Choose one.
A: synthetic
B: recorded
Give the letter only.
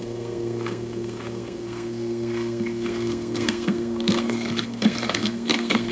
A